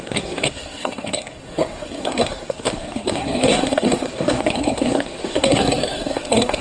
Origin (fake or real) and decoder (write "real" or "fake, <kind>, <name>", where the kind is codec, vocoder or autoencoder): fake, codec, SNAC